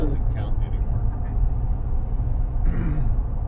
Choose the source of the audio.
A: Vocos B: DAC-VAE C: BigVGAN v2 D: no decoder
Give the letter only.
D